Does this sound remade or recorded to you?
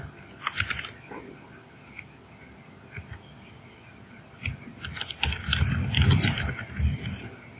recorded